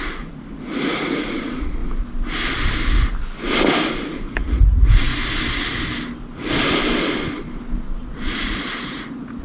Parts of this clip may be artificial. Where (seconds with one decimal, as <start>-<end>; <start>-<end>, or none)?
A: 0.0-1.8; 3.9-5.1; 8.0-9.4